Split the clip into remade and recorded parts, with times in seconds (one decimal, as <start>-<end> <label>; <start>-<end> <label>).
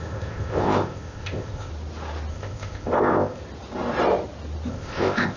0.0-1.7 remade; 1.7-2.3 recorded; 2.3-3.4 remade; 3.4-4.7 recorded; 4.7-5.4 remade